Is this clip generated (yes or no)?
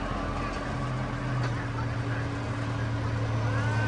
no